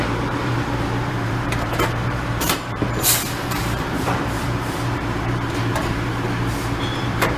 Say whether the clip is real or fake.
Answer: fake